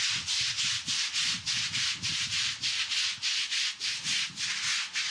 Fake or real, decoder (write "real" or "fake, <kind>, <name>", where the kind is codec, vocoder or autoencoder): real